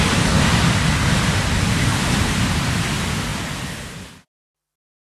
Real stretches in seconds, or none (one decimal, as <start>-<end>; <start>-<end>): 0.0-1.9; 2.8-5.0